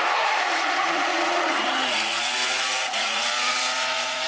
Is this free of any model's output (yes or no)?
no